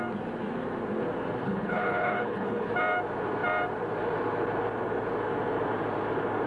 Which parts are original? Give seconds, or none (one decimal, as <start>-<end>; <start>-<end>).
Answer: 0.0-1.4; 2.7-6.5